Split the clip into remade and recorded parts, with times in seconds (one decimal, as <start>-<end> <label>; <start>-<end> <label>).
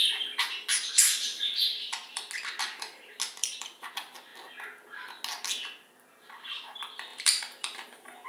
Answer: 0.0-0.7 recorded; 0.7-2.3 remade; 2.3-3.4 recorded; 3.4-3.9 remade; 3.9-7.1 recorded; 7.1-8.3 remade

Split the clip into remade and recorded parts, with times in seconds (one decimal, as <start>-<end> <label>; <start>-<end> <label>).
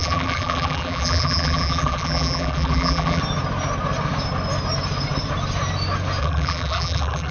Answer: 0.0-3.2 remade; 3.2-6.2 recorded; 6.2-7.3 remade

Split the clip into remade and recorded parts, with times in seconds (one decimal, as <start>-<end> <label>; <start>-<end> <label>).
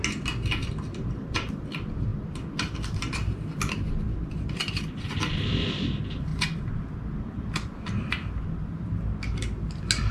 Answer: 0.0-10.1 recorded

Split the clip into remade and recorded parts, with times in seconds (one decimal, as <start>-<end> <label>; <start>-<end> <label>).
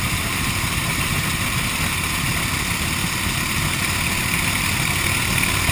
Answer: 0.0-2.3 remade; 2.3-3.0 recorded; 3.0-4.9 remade; 4.9-5.7 recorded